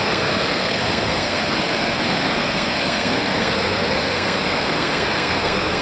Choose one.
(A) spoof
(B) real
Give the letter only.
A